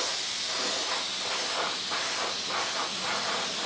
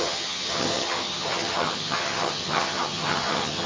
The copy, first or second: second